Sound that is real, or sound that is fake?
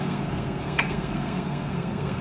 fake